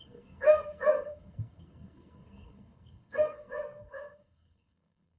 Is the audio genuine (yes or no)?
no